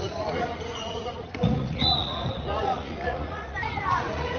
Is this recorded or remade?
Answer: remade